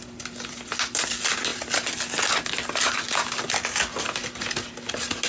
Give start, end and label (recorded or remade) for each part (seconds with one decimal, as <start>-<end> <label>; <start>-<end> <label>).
0.0-5.3 recorded